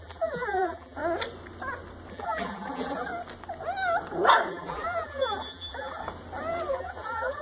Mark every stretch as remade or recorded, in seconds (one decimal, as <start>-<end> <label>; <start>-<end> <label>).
0.0-1.0 remade; 1.0-2.1 recorded; 2.1-3.1 remade; 3.1-4.5 recorded; 4.5-6.0 remade; 6.0-6.7 recorded; 6.7-7.4 remade

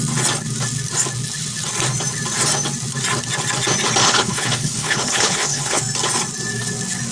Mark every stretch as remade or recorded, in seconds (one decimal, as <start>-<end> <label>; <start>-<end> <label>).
0.0-4.0 recorded; 4.0-5.8 remade; 5.8-7.1 recorded

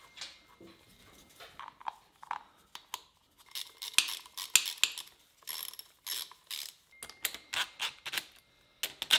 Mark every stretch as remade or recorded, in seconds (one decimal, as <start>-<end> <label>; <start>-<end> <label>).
0.0-1.0 recorded; 1.0-1.6 remade; 1.6-9.2 recorded

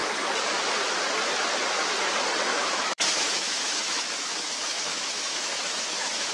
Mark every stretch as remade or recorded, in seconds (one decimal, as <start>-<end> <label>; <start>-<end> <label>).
0.0-2.5 recorded; 2.5-6.3 remade

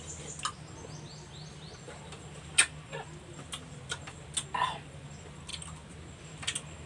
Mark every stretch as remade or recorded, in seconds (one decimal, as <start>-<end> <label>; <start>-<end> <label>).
0.0-6.9 recorded

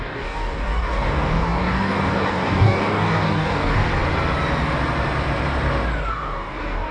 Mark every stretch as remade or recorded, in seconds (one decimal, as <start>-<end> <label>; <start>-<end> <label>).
0.0-3.9 remade; 3.9-6.1 recorded; 6.1-6.9 remade